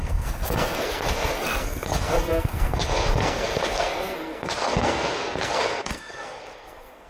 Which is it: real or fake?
fake